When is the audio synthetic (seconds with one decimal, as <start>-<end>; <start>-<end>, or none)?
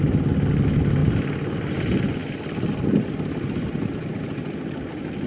none